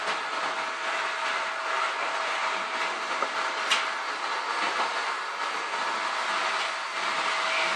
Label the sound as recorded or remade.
recorded